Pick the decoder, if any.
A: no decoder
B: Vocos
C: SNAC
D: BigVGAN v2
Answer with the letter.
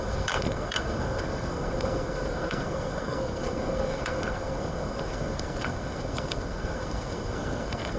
C